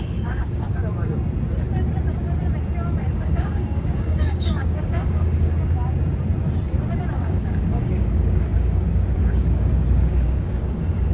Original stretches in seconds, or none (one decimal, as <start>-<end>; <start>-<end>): 0.8-3.1; 5.5-7.1